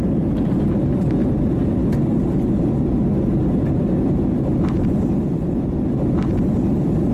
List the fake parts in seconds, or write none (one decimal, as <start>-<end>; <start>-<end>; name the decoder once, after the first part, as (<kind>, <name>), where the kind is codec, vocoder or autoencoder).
none